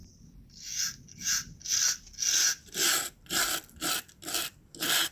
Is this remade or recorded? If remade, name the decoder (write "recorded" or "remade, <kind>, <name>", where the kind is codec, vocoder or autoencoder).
recorded